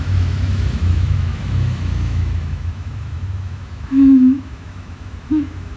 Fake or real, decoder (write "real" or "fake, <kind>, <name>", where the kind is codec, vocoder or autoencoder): fake, autoencoder, DAC-VAE